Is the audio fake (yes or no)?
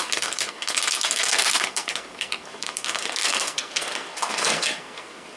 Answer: yes